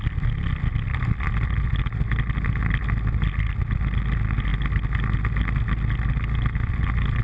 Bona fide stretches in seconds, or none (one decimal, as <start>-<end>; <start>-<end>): 0.0-7.2